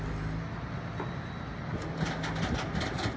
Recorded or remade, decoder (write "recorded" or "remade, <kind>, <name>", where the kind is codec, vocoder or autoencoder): recorded